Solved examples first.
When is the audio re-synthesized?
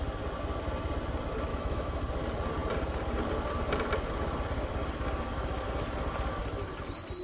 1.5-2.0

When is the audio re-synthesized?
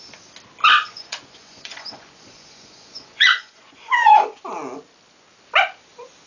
0.6-4.4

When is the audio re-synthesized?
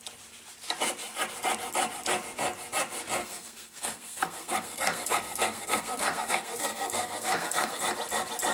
3.2-7.8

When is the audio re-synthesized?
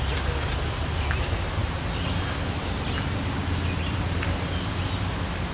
none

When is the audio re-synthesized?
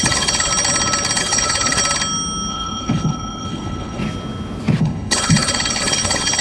0.0-0.5; 1.2-1.8; 2.5-4.0; 4.8-6.4